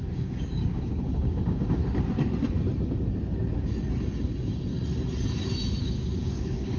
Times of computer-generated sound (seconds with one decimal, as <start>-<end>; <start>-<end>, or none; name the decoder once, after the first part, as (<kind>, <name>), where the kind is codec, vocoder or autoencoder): 0.0-1.8 (codec, DAC); 5.8-6.8